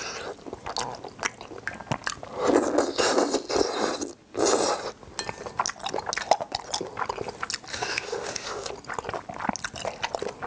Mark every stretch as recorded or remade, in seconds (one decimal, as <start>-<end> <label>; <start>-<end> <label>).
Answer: 0.0-7.7 recorded; 7.7-8.7 remade; 8.7-10.5 recorded